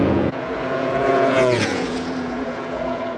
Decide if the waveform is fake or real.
fake